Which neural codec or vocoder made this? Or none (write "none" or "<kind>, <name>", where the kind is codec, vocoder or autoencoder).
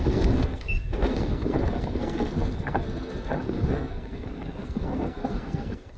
codec, SNAC